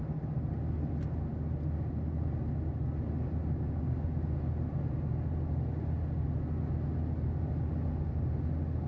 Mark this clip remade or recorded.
recorded